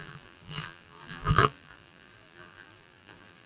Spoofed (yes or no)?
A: yes